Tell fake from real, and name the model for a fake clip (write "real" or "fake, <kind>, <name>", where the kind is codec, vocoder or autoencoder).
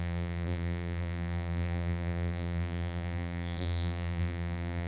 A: fake, vocoder, BigVGAN v2